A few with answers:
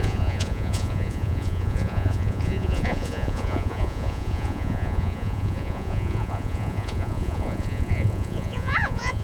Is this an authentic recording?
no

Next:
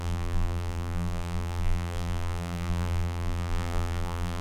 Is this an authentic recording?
no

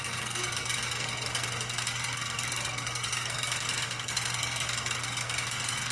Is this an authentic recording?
no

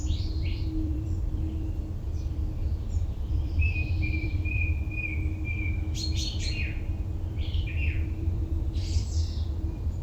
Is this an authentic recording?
no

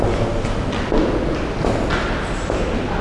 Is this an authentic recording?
yes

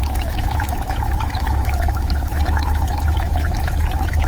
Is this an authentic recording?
no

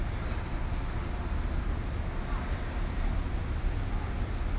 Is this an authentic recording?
yes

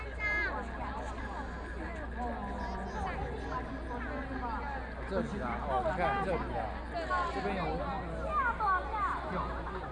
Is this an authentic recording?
yes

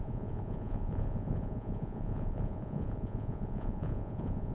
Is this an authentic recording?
no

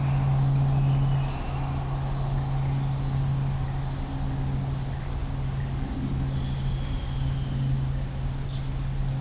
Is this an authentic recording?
yes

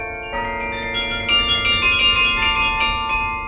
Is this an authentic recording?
yes